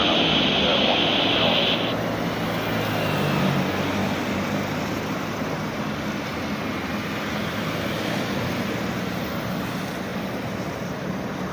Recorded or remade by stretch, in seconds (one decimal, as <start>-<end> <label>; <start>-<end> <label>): 0.0-4.0 recorded; 4.0-5.8 remade; 5.8-10.1 recorded; 10.1-11.1 remade; 11.1-11.5 recorded